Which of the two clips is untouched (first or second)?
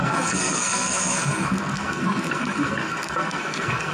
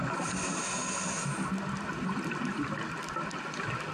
second